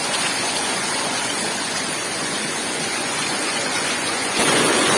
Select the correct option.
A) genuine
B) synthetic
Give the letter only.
B